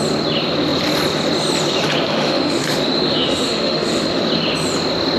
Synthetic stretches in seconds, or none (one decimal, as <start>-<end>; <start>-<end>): 2.1-4.2